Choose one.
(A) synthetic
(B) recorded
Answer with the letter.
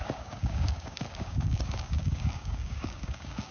A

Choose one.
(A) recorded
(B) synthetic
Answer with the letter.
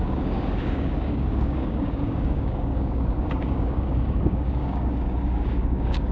B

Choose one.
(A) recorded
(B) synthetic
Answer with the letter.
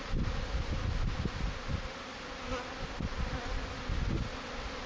A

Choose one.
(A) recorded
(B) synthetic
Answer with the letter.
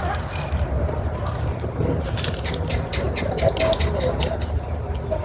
A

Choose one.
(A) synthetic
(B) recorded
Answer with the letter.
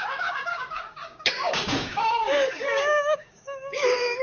A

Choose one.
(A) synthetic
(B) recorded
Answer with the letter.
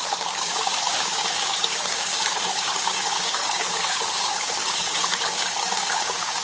A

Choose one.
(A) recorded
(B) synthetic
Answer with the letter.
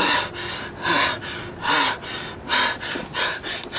A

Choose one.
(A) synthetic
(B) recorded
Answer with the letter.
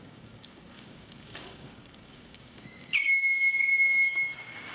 A